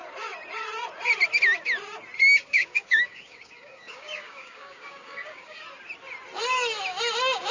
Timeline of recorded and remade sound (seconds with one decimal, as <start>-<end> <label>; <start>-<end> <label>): 0.0-2.4 recorded; 2.4-5.6 remade; 5.6-7.5 recorded